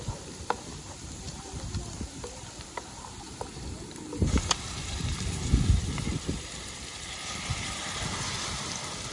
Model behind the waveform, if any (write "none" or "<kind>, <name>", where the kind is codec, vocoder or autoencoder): vocoder, BigVGAN v2